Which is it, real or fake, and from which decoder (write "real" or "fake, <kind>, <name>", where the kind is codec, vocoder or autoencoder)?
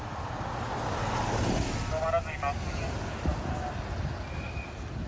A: real